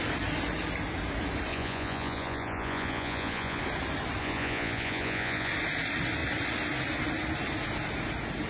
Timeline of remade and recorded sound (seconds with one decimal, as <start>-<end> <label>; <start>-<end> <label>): 0.0-1.5 recorded; 1.5-3.6 remade; 3.6-4.2 recorded; 4.2-5.5 remade; 5.5-8.5 recorded